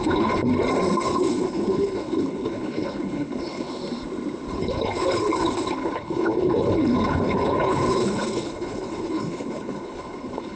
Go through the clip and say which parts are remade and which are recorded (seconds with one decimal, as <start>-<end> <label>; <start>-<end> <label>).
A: 0.0-0.5 remade; 0.5-1.0 recorded; 1.0-3.8 remade; 3.8-4.6 recorded; 4.6-10.6 remade